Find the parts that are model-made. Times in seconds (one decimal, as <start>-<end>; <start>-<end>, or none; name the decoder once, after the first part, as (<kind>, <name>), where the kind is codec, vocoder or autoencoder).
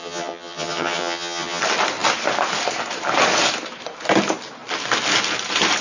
0.0-1.6 (vocoder, HiFi-GAN)